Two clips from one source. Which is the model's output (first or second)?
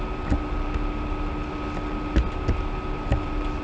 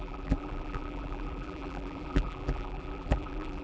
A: second